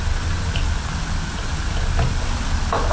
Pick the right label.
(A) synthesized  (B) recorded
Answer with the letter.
B